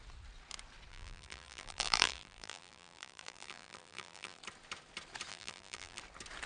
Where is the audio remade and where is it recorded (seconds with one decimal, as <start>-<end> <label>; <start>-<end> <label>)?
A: 0.0-0.9 recorded; 0.9-4.4 remade; 4.4-5.3 recorded; 5.3-6.0 remade; 6.0-6.5 recorded